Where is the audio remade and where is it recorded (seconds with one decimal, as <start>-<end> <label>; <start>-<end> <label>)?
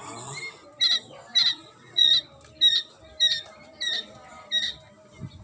0.0-1.5 recorded; 1.5-2.1 remade; 2.1-5.4 recorded